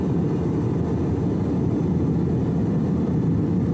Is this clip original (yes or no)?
yes